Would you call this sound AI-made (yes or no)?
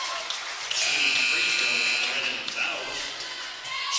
yes